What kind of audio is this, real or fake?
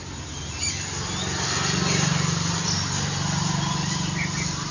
real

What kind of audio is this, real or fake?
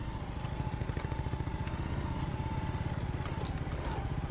real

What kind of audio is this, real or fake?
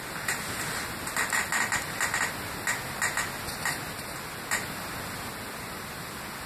real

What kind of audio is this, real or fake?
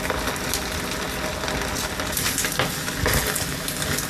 real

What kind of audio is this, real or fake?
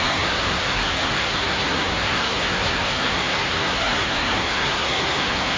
fake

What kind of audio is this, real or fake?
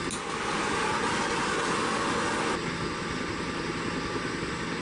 real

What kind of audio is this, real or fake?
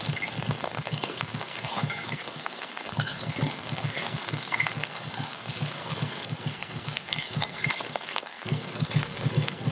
fake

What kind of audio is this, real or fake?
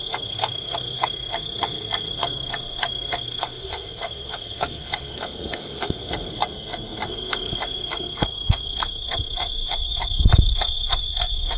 fake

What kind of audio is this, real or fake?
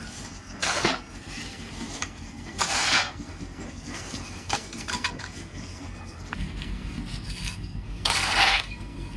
fake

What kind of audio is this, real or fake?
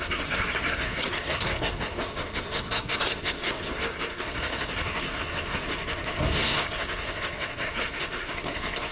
fake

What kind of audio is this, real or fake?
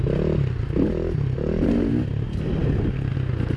real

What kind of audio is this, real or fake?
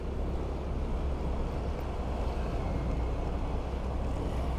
real